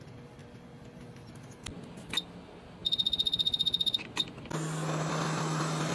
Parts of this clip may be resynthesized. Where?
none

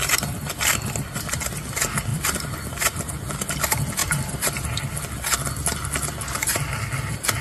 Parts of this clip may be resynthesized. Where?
2.1-3.1 (vocoder, BigVGAN v2); 4.0-4.8; 6.4-6.9

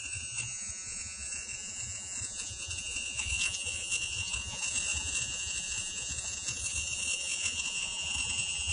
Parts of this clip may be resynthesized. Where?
0.0-8.7 (vocoder, Vocos)

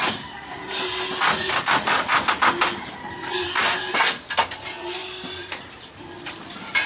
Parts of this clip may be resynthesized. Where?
none

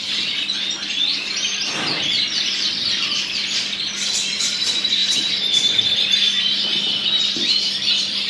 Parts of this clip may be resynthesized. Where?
0.0-8.3 (vocoder, BigVGAN v2)